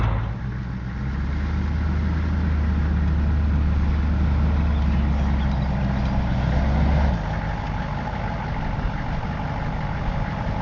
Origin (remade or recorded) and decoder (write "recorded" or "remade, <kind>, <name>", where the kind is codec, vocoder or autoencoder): recorded